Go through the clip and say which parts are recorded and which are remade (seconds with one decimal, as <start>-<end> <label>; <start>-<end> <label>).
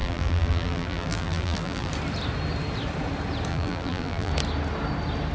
0.0-1.9 remade; 1.9-3.5 recorded; 3.5-4.3 remade; 4.3-5.3 recorded